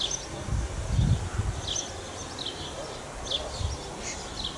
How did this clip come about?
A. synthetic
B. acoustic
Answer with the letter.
B